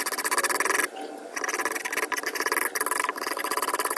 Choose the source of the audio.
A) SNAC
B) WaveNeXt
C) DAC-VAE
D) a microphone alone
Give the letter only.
D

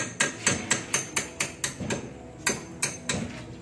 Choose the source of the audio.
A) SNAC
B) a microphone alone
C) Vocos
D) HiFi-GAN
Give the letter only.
B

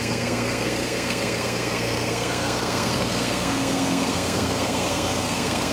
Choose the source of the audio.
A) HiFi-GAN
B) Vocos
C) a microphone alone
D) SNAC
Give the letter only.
D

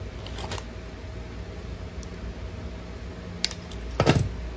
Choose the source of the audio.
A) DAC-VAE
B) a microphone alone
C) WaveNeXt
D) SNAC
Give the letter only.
B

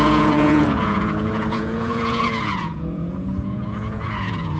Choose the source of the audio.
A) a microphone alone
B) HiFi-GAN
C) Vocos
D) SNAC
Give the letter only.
C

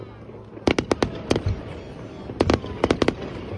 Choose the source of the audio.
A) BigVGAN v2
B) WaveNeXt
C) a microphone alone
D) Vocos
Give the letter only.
C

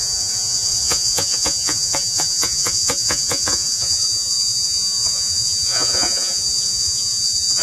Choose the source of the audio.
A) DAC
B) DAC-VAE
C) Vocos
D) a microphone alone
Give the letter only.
C